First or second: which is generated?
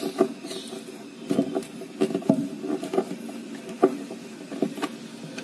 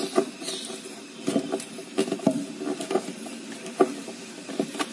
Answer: second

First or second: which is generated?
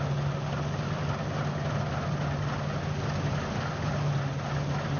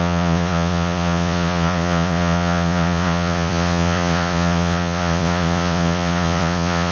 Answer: second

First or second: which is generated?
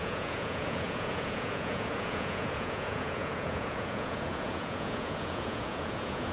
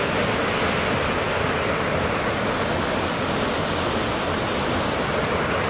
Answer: first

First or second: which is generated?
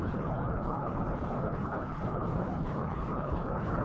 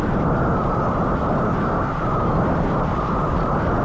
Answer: first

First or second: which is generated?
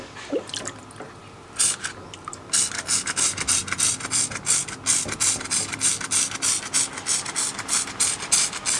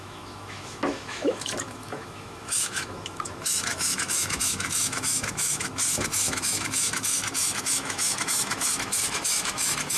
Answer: second